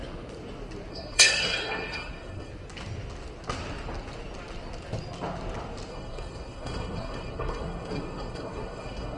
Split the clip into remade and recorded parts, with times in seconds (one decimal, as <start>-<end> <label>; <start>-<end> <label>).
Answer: 0.0-0.9 recorded; 0.9-2.5 remade; 2.5-5.9 recorded; 5.9-9.2 remade